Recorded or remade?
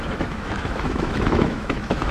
remade